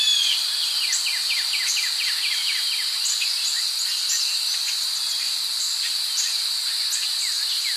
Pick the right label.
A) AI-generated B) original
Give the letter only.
B